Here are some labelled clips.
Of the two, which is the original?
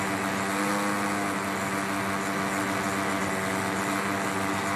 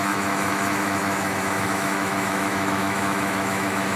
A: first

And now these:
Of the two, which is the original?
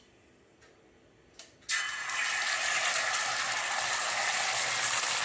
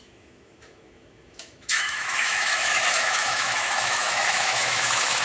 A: first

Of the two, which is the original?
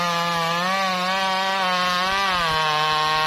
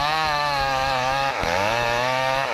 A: first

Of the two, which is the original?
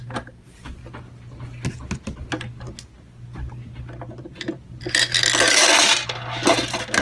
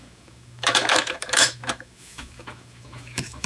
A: first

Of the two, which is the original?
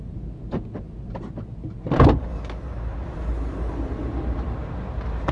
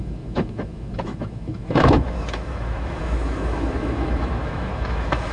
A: first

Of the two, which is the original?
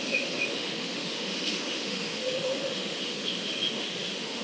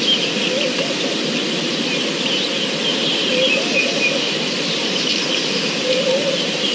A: second